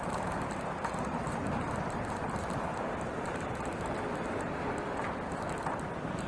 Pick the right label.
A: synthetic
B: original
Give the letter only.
B